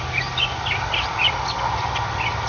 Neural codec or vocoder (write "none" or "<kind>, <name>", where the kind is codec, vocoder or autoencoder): none